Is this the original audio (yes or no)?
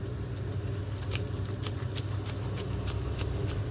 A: yes